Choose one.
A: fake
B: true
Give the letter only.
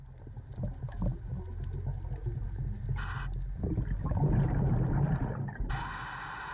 B